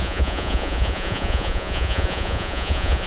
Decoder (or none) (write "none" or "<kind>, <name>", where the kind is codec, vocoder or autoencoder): vocoder, Vocos